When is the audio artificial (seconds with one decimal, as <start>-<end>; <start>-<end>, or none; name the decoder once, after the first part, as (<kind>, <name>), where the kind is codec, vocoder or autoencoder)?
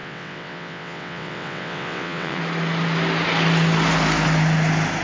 0.0-2.4 (vocoder, WaveNeXt)